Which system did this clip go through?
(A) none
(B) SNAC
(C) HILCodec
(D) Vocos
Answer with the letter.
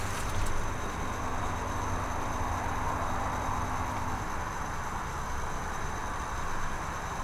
A